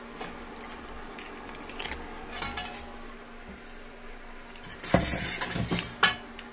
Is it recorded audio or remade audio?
recorded